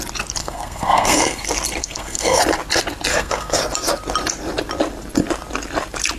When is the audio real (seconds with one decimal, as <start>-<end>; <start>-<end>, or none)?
0.0-0.4; 1.4-1.8; 2.4-3.1; 3.6-6.2

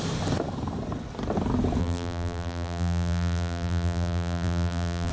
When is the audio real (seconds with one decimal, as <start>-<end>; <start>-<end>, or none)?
0.0-1.8

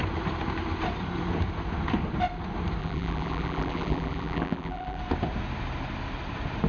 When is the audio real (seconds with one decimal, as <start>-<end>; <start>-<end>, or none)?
0.0-2.8; 5.0-6.7

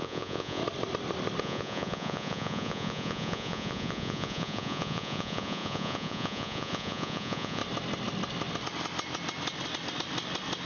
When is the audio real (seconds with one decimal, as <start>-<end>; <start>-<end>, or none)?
0.6-1.4; 7.6-10.7

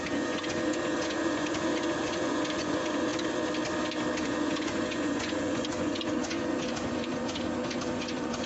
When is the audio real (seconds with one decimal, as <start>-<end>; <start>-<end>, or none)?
3.1-4.2